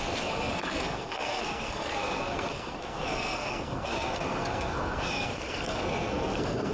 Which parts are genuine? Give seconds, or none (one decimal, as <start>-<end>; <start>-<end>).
none